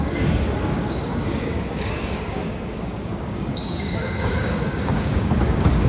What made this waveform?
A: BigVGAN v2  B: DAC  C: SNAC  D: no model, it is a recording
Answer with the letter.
B